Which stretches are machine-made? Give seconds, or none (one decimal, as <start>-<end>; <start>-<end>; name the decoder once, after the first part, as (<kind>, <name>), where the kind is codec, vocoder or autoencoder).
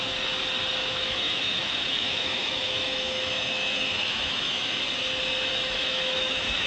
0.8-4.8 (autoencoder, DAC-VAE); 5.5-6.7